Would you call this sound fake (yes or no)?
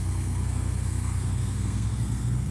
yes